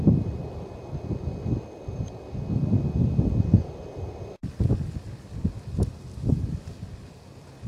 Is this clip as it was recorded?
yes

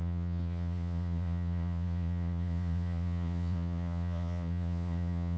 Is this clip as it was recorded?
no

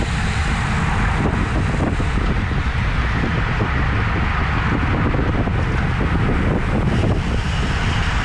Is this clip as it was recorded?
yes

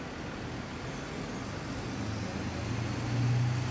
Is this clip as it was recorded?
yes